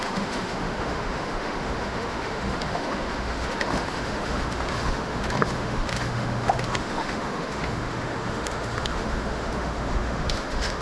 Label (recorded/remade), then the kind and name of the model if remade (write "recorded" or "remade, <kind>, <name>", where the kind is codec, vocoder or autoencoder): remade, autoencoder, DAC-VAE